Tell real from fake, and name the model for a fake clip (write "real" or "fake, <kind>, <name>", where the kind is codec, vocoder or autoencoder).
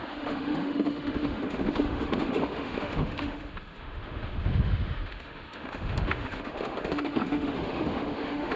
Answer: fake, autoencoder, DAC-VAE